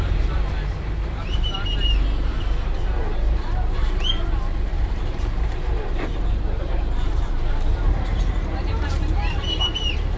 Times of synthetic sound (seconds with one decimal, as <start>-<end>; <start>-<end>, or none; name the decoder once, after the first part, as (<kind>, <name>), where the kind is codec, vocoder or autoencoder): 0.0-10.2 (vocoder, BigVGAN v2)